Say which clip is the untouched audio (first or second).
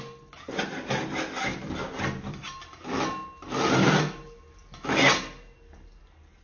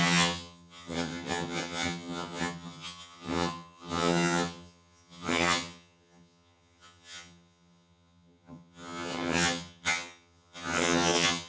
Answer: first